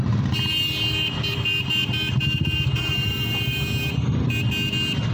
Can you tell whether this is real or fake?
real